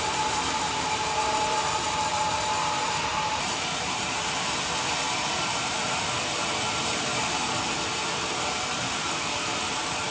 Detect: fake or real fake